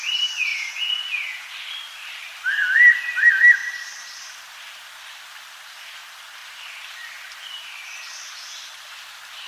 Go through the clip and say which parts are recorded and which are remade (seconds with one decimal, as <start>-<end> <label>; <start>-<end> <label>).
0.0-0.5 recorded; 0.5-1.5 remade; 1.5-9.5 recorded